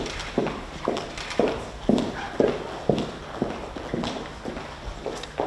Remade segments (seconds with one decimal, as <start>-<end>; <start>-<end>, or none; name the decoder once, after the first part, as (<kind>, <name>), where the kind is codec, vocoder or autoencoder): 4.3-5.1 (vocoder, BigVGAN v2)